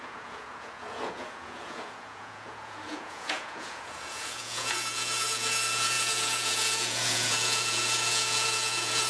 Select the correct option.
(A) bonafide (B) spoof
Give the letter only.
B